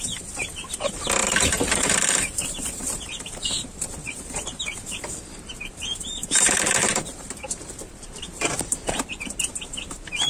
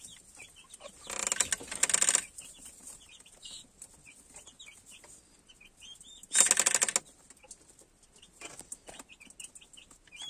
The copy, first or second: first